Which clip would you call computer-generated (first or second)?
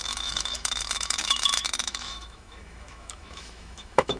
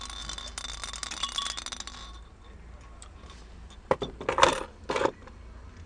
first